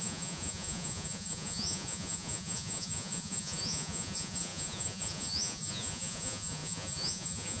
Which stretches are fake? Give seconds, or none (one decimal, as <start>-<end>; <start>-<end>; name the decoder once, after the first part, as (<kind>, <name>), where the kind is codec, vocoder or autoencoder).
0.0-7.6 (vocoder, Vocos)